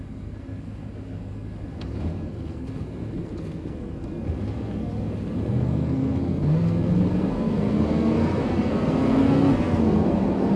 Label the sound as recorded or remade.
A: remade